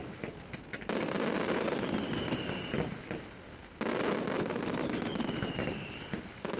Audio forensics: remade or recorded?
recorded